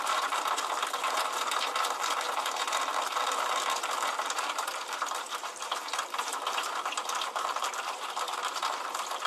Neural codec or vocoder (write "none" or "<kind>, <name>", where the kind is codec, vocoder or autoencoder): vocoder, BigVGAN v2